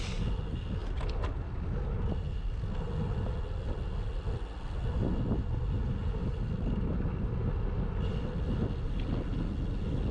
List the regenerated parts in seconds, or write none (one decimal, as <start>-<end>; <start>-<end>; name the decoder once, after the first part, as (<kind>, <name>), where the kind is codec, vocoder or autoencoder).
none